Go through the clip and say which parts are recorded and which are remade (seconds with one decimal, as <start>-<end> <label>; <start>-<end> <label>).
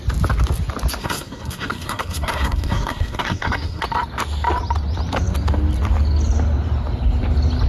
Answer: 0.0-1.0 recorded; 1.0-3.8 remade; 3.8-7.7 recorded